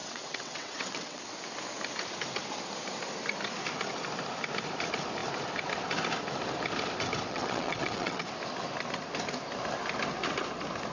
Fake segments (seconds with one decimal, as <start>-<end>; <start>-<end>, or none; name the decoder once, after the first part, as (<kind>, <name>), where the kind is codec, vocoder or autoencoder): 0.0-1.2 (vocoder, WaveNeXt); 7.3-8.2